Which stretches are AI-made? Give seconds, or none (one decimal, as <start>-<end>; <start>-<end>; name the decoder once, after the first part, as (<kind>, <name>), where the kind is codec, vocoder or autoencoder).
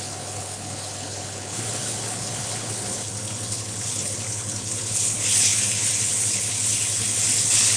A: 0.0-7.8 (codec, HILCodec)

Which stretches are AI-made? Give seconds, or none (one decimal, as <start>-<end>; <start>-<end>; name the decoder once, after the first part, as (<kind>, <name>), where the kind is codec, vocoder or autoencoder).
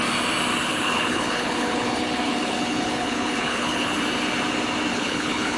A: 0.6-4.0 (codec, HILCodec); 4.9-5.6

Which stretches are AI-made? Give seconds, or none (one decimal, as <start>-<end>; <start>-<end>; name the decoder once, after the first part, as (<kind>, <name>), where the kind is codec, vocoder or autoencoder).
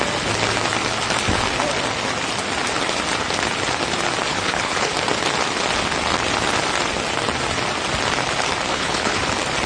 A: 4.3-4.9 (codec, HILCodec); 8.7-9.2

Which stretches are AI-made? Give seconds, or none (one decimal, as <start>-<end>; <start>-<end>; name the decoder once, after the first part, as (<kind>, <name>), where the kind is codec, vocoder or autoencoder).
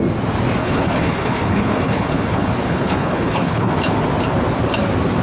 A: 0.6-3.7 (codec, HILCodec)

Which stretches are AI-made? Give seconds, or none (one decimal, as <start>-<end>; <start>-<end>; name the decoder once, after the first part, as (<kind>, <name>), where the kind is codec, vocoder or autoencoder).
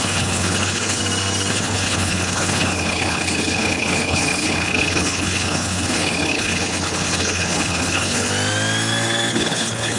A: 0.0-1.0 (codec, HILCodec); 1.5-8.3; 9.3-10.0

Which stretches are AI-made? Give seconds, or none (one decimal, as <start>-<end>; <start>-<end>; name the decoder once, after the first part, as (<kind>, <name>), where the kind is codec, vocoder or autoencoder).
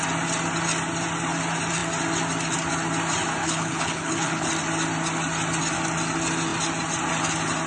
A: 3.4-4.5 (codec, HILCodec)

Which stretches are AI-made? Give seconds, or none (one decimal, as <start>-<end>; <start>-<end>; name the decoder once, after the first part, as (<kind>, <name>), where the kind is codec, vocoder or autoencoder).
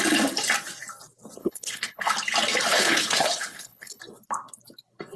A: 1.4-2.1 (codec, HILCodec); 2.7-4.0